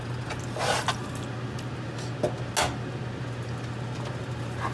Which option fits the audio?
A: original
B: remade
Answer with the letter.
A